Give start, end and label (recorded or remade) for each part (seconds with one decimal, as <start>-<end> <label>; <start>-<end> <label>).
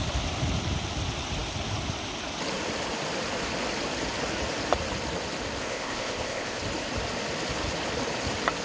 0.0-5.6 recorded; 5.6-6.6 remade; 6.6-8.6 recorded